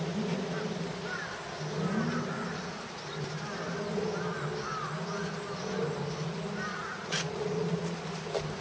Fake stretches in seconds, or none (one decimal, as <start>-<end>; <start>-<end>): 6.7-8.0